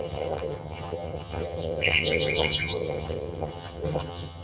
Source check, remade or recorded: remade